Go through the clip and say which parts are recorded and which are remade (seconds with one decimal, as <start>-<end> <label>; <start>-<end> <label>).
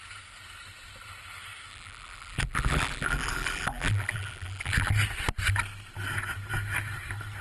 0.0-1.7 recorded; 1.7-4.9 remade; 4.9-7.4 recorded